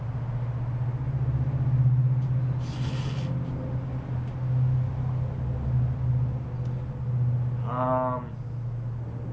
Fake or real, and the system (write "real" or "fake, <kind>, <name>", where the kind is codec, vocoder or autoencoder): real